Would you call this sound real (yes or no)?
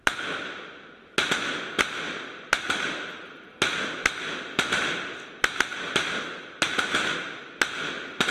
yes